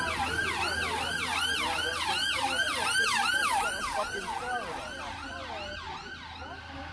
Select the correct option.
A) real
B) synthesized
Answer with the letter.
A